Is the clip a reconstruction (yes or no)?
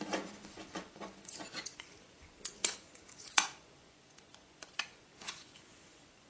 yes